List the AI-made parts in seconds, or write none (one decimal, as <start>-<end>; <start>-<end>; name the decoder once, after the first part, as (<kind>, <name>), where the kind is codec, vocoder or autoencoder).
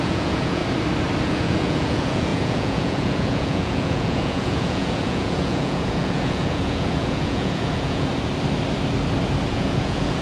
0.0-0.6 (vocoder, Vocos); 1.3-8.1; 9.5-10.2